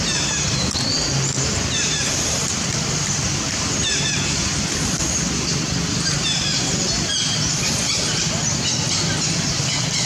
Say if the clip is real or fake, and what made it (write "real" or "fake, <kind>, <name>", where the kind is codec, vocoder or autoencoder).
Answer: fake, vocoder, BigVGAN v2